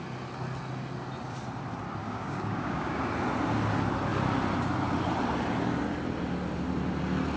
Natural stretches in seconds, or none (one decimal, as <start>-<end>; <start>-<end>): 0.0-2.0; 3.0-7.4